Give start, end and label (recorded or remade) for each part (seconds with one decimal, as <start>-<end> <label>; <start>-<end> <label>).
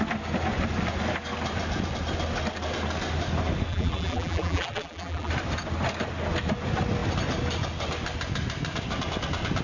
0.0-3.7 recorded; 3.7-5.3 remade; 5.3-9.6 recorded